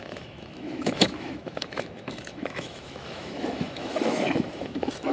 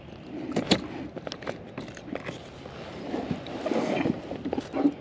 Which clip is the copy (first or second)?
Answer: first